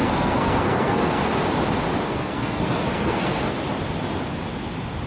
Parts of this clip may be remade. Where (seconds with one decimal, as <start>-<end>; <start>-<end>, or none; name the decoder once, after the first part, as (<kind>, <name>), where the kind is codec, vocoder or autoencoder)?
0.0-1.2 (codec, SNAC); 2.1-3.6